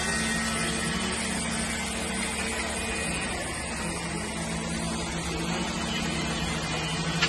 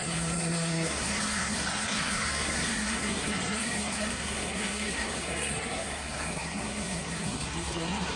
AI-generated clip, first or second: second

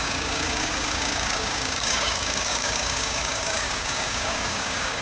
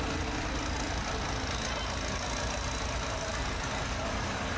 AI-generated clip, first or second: first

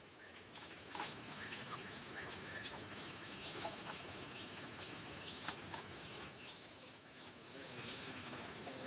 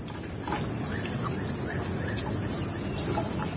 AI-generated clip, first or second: first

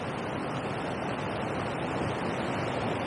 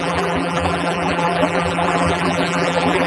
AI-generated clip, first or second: second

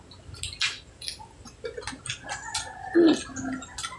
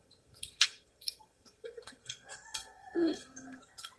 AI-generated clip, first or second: second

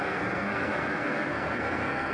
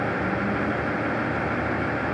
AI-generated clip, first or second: first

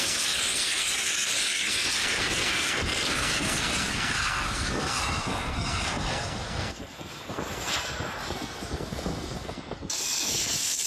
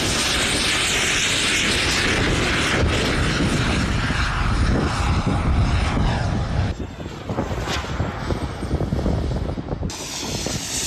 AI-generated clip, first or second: first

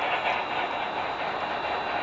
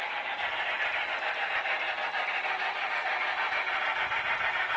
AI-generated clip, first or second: second